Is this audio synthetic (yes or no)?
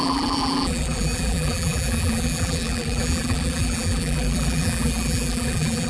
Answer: yes